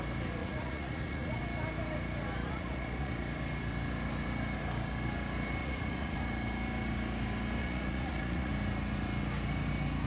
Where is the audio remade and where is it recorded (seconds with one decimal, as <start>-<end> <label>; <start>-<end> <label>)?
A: 0.0-0.4 recorded; 0.4-1.4 remade; 1.4-2.4 recorded; 2.4-3.1 remade; 3.1-5.6 recorded; 5.6-6.2 remade; 6.2-7.6 recorded; 7.6-8.5 remade; 8.5-10.1 recorded